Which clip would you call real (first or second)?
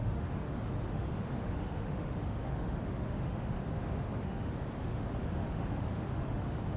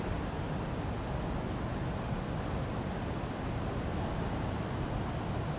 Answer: second